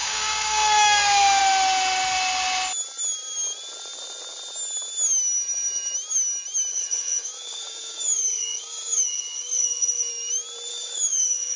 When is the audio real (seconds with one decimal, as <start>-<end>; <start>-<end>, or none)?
1.4-6.7; 10.1-10.7